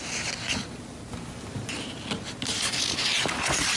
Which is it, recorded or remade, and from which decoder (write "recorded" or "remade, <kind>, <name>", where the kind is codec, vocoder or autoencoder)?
recorded